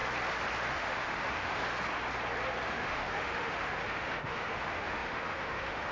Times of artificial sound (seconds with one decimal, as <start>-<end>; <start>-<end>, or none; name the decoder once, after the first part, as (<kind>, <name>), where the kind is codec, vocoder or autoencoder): 0.7-1.6 (autoencoder, DAC-VAE); 2.7-5.9